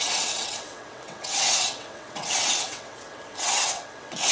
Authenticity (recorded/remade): remade